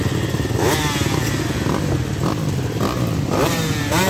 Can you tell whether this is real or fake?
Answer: real